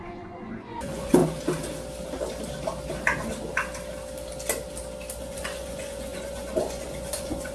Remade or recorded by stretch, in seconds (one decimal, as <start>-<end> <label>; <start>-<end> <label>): 0.0-1.2 remade; 1.2-5.2 recorded; 5.2-7.5 remade